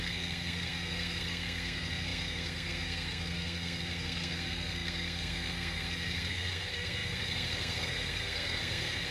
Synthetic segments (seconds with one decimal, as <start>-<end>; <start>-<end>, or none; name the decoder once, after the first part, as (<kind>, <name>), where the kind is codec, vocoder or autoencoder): 0.0-9.1 (codec, SNAC)